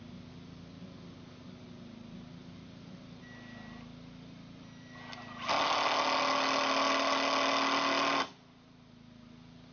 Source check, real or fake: real